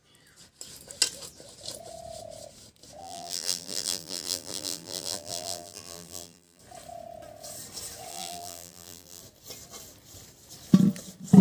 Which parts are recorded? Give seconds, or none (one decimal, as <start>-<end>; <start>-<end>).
0.0-3.0; 6.6-8.1; 9.2-11.4